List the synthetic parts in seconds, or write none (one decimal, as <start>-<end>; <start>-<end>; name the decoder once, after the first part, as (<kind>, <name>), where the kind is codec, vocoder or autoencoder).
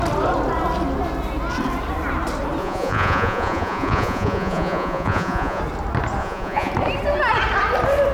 2.6-5.6 (vocoder, Vocos); 6.2-6.7